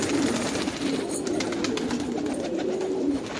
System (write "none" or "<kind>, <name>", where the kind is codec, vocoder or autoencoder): none